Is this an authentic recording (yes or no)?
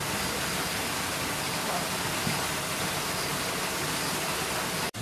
yes